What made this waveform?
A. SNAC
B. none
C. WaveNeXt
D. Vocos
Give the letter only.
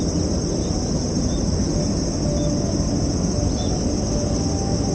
B